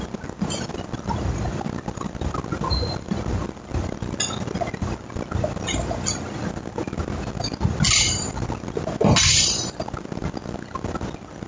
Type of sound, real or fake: real